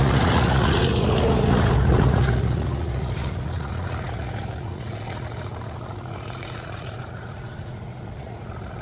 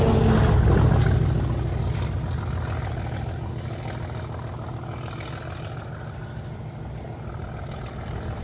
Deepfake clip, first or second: first